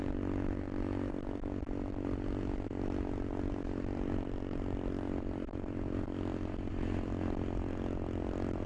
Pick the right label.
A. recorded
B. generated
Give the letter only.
A